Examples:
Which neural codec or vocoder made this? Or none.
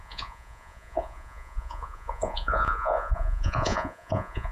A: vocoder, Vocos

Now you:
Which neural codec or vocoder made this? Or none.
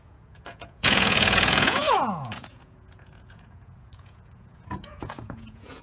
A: vocoder, Vocos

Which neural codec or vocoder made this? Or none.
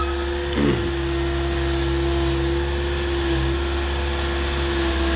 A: none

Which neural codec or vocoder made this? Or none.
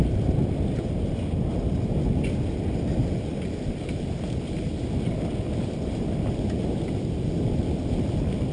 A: none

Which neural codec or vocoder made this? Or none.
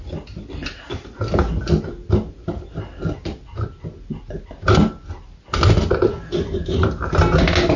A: none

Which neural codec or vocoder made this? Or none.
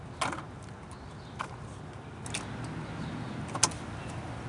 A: none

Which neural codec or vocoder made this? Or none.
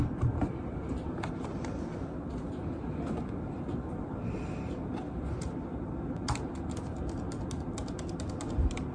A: none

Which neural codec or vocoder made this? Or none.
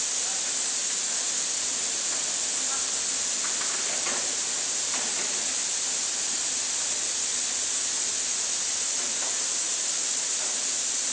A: none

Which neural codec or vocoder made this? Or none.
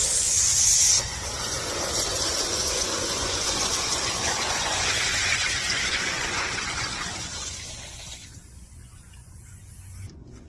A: vocoder, Vocos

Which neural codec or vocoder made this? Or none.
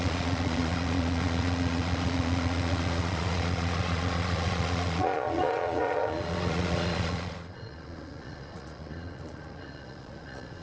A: vocoder, Vocos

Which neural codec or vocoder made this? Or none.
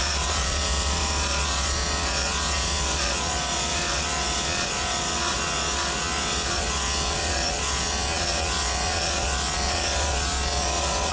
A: vocoder, Vocos